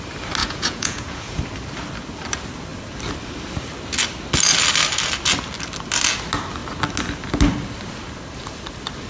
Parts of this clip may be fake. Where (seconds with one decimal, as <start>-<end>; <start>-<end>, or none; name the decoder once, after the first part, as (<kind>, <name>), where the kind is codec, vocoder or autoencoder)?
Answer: 0.4-1.4 (vocoder, Vocos)